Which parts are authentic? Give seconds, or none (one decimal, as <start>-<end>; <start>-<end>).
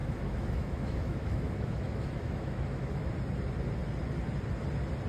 3.1-5.1